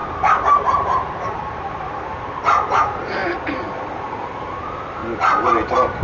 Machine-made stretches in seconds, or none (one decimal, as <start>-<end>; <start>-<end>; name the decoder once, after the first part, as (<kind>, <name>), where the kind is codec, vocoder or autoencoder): 0.0-5.0 (vocoder, BigVGAN v2)